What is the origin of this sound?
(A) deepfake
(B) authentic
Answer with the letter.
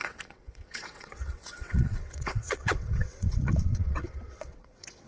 A